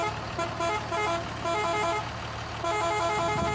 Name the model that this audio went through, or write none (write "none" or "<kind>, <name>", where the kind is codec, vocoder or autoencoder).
none